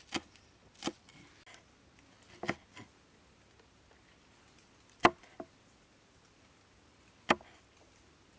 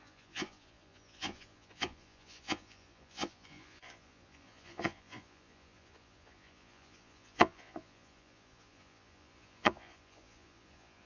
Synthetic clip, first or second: second